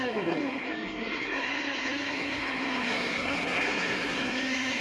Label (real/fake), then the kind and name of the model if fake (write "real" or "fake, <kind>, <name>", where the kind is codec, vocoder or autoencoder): fake, codec, SNAC